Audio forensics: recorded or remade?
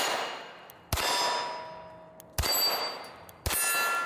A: recorded